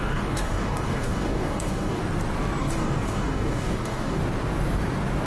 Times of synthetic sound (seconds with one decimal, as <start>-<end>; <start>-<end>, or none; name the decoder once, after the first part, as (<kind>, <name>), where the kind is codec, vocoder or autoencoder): 0.0-2.0 (codec, DAC); 2.6-4.2